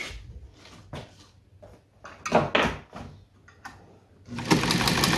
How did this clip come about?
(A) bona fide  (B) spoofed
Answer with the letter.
A